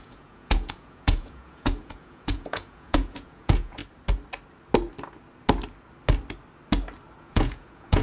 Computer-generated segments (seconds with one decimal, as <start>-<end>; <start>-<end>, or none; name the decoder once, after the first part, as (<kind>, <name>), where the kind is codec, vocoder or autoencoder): 0.0-3.8 (vocoder, Vocos); 7.2-8.0